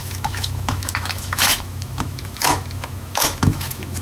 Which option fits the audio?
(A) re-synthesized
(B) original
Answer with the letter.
A